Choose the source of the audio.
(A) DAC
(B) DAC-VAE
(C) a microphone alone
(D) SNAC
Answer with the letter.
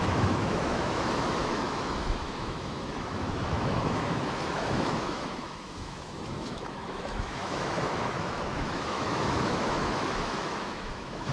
B